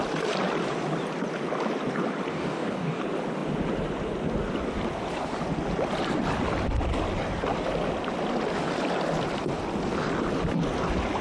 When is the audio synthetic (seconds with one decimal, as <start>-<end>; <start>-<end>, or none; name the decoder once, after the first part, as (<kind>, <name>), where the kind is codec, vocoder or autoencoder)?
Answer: 2.3-3.0 (codec, DAC)